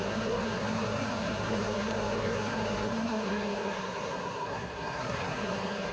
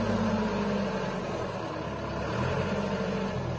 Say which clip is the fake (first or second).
first